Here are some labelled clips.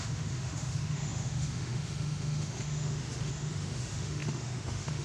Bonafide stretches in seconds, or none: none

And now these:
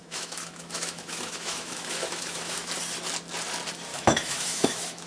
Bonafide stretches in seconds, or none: 2.7-3.9

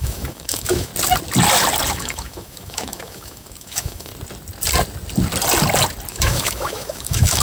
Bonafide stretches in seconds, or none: 0.9-1.9; 4.1-6.1

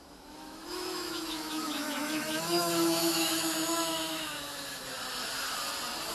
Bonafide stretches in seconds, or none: 4.8-6.1

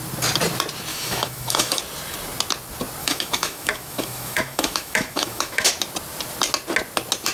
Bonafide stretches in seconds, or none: 0.0-0.9; 1.8-3.0; 5.7-7.3